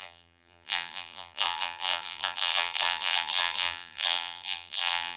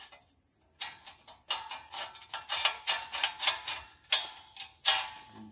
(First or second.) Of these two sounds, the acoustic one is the second